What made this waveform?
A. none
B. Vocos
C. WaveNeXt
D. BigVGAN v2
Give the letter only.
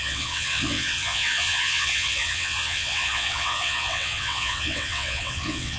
C